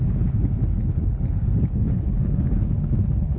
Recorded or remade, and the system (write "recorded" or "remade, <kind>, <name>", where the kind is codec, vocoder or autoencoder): remade, codec, HILCodec